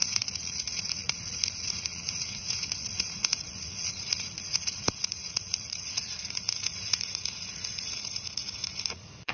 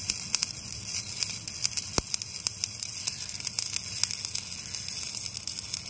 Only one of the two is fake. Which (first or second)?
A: first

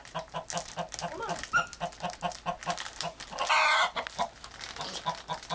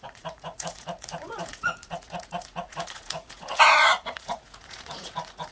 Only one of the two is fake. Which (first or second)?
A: second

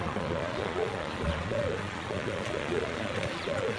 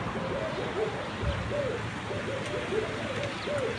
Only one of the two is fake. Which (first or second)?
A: first